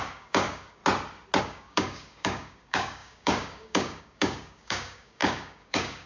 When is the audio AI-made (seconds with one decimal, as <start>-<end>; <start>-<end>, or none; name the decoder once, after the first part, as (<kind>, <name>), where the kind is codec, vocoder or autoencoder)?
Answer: 0.0-0.8 (codec, DAC); 1.4-6.1

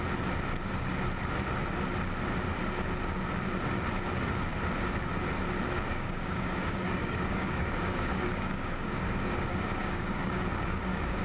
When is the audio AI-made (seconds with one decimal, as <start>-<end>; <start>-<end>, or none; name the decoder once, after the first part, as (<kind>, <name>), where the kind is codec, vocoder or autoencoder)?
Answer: 5.9-11.2 (codec, DAC)

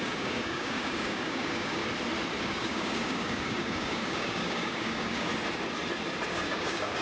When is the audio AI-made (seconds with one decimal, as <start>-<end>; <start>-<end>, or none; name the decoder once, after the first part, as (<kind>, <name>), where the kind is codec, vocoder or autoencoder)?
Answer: 0.0-1.8 (codec, DAC); 2.4-5.3; 6.3-7.0

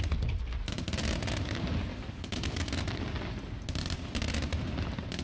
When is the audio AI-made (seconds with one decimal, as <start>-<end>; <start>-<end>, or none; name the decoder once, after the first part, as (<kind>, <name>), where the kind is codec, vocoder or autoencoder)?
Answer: 1.9-2.7 (codec, DAC)